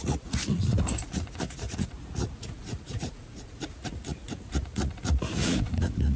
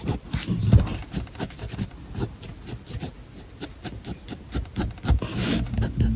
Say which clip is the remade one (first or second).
first